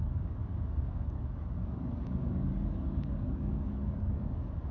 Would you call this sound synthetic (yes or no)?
yes